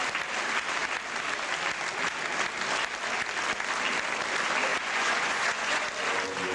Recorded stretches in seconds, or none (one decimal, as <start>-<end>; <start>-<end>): 0.0-4.7; 5.9-6.5